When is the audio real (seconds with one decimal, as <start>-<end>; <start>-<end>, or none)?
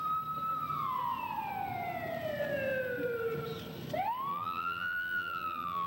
0.0-4.3